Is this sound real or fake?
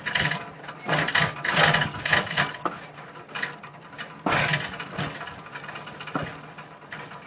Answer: real